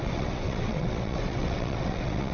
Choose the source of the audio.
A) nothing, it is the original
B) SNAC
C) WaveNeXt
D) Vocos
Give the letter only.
C